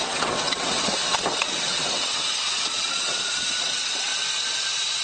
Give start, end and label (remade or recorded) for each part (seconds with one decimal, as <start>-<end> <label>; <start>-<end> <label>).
0.0-4.1 remade; 4.1-5.0 recorded